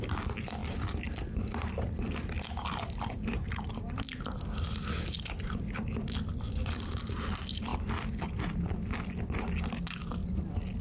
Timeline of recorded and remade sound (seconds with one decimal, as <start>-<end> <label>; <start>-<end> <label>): 0.0-0.6 recorded; 0.6-3.5 remade; 3.5-6.0 recorded; 6.0-7.0 remade; 7.0-10.2 recorded; 10.2-10.8 remade